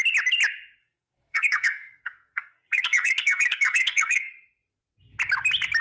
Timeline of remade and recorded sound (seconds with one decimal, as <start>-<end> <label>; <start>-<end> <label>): 0.0-0.8 recorded; 0.8-4.3 remade; 4.3-5.8 recorded